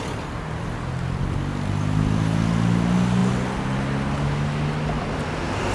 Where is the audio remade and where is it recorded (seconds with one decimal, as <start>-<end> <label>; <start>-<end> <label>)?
0.0-5.7 recorded